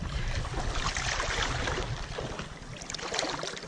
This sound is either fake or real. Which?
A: real